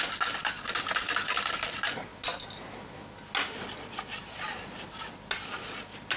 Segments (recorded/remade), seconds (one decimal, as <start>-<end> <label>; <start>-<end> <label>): 0.0-6.2 recorded